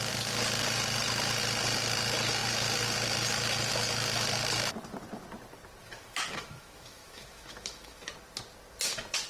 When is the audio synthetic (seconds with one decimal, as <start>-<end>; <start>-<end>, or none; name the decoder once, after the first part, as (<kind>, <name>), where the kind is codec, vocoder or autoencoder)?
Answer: 5.8-8.1 (autoencoder, DAC-VAE)